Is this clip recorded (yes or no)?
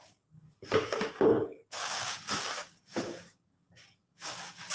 no